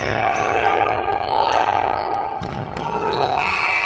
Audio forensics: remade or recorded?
remade